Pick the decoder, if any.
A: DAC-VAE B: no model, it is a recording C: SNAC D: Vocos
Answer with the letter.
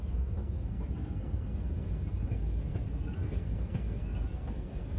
C